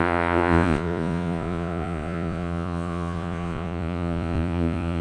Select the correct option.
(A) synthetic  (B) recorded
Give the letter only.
A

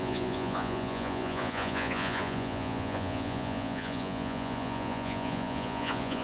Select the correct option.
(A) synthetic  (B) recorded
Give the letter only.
A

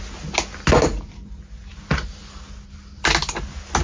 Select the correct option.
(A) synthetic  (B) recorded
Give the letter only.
B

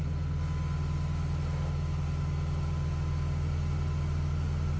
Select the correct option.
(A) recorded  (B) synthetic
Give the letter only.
A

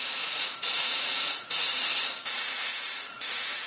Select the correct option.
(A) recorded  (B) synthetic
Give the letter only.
B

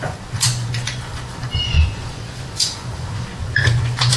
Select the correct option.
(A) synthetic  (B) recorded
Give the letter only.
A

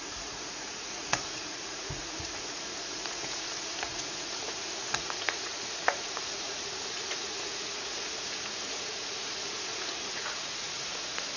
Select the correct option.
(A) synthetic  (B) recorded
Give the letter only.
A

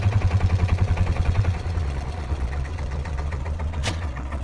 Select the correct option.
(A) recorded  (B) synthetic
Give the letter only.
B